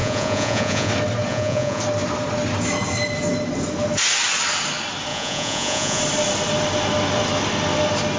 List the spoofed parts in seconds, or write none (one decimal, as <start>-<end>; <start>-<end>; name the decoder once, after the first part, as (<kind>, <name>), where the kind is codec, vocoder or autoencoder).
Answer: 0.0-0.9 (vocoder, Vocos); 1.3-1.8; 5.1-6.0